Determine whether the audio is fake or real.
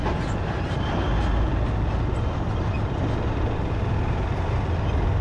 real